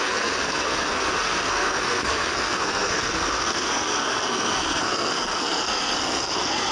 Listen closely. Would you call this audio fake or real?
fake